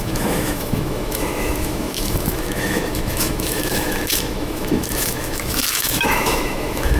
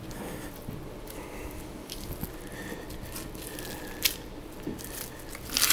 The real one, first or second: second